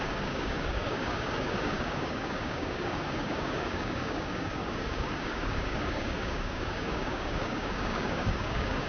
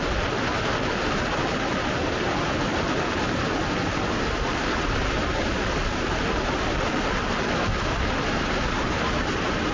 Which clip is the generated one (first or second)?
first